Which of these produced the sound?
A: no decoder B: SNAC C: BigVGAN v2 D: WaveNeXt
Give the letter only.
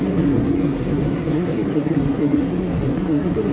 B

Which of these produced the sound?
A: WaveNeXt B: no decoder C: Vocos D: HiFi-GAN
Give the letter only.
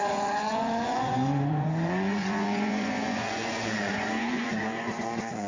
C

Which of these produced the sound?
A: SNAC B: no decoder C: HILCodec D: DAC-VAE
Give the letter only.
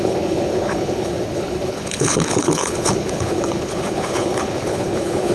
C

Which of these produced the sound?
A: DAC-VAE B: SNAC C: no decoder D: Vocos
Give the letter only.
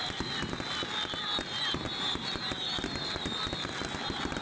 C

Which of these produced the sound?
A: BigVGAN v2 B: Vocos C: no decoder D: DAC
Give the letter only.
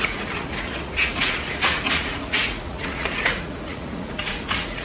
B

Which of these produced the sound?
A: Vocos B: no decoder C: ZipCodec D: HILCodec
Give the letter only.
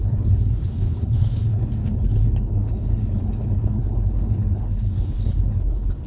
D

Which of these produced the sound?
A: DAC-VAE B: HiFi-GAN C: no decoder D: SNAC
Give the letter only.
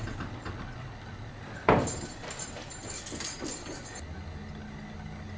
C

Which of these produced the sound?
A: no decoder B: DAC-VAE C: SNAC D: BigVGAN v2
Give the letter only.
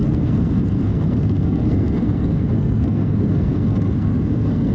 C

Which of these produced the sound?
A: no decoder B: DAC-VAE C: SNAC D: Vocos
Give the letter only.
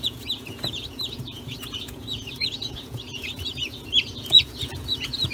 D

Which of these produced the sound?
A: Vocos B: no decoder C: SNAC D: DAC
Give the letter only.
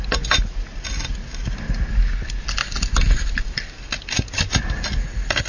B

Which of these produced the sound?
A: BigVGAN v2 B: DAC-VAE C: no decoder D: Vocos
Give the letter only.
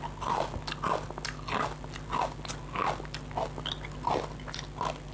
C